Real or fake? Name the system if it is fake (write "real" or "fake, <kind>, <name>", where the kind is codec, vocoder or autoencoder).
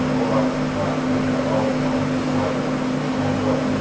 real